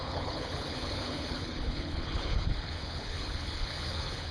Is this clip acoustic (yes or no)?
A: no